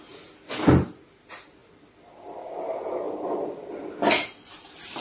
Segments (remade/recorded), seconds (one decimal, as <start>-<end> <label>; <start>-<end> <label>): 0.0-5.0 recorded